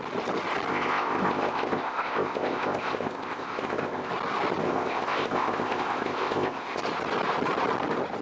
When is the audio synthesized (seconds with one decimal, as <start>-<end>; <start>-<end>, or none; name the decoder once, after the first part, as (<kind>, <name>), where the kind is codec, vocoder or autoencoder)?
0.7-4.1 (codec, ZipCodec); 4.6-6.8

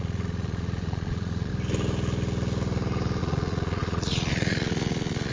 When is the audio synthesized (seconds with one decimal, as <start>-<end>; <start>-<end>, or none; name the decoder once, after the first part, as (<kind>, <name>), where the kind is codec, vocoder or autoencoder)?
0.0-1.5 (vocoder, Vocos); 3.2-5.3